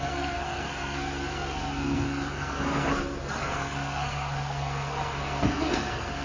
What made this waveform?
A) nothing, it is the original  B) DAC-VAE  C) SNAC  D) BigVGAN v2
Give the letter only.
C